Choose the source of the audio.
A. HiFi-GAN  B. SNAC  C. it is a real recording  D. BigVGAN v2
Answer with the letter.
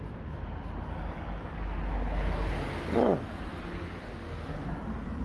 C